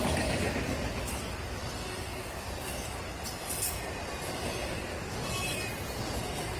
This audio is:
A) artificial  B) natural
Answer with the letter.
B